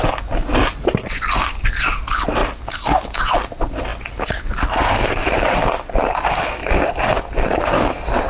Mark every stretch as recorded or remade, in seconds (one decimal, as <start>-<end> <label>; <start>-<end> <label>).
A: 0.0-8.3 recorded